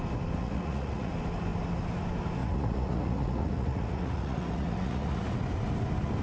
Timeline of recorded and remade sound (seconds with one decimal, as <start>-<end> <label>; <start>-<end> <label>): 0.0-0.4 recorded; 0.4-1.1 remade; 1.1-2.4 recorded; 2.4-5.2 remade; 5.2-6.2 recorded